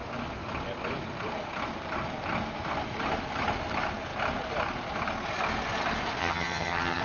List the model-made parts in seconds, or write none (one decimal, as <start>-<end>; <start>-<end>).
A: 6.2-7.0